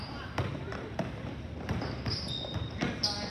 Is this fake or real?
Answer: real